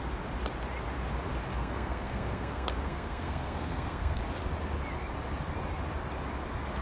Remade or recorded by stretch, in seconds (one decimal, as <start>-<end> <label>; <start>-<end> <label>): 0.0-1.5 recorded; 1.5-4.2 remade; 4.2-6.8 recorded